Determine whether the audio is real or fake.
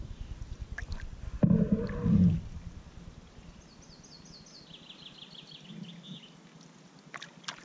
real